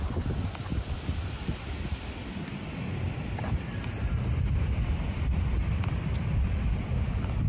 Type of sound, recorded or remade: recorded